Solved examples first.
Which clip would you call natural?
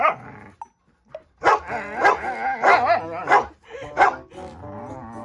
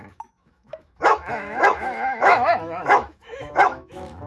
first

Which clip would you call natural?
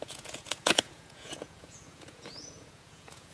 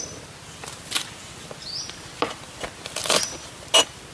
second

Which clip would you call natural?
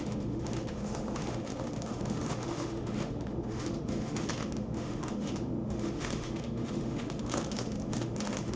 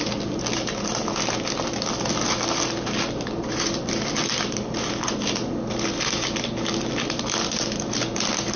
second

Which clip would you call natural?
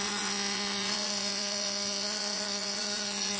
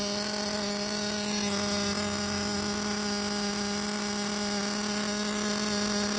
second